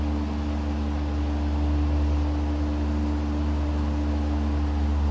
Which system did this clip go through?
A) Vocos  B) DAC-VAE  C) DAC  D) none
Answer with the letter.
D